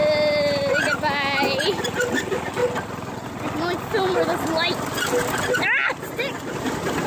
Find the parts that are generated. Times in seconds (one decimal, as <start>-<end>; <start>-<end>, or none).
none